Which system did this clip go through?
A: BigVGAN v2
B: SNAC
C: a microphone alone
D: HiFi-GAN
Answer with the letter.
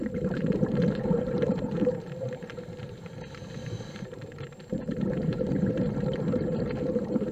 A